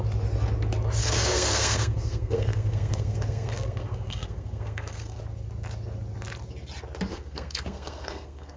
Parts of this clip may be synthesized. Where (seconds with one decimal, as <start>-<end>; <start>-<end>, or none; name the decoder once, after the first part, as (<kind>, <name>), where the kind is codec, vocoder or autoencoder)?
1.0-5.2 (codec, SNAC); 7.1-8.6